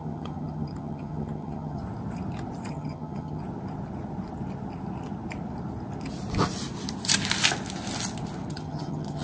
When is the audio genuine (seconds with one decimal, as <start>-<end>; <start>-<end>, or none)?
1.8-2.7; 3.4-8.5